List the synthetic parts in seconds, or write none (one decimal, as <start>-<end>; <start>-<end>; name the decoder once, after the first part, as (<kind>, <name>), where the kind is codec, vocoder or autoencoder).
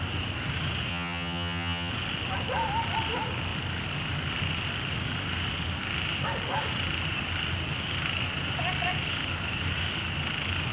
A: 0.9-1.9 (vocoder, HiFi-GAN)